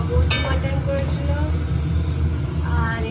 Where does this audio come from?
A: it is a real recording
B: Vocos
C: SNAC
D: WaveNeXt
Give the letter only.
A